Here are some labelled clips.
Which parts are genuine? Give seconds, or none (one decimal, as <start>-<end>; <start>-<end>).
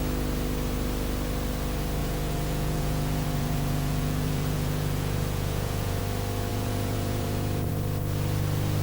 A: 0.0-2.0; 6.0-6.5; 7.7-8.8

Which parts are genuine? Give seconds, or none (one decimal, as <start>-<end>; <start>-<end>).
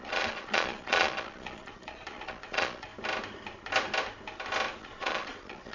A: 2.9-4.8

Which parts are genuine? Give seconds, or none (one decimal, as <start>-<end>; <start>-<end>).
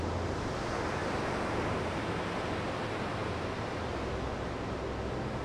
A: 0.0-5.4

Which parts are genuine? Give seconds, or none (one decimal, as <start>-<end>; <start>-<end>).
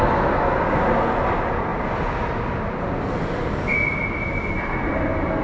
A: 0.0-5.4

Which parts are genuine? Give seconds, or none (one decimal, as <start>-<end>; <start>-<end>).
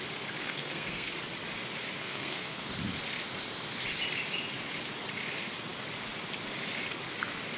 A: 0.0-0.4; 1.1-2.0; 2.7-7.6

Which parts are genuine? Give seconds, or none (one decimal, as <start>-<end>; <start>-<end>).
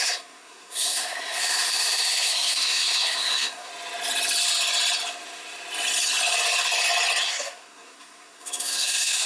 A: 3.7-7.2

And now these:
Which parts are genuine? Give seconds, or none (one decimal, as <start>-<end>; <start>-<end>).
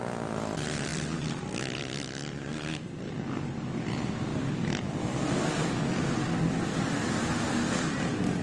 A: 0.0-0.9; 2.3-8.4